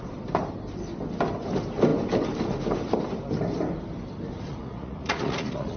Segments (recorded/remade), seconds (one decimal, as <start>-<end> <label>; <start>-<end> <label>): 0.0-4.5 recorded; 4.5-5.8 remade